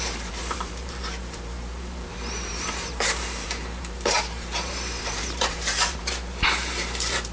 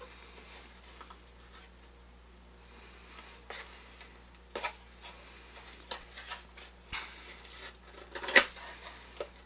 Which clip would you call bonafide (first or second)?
second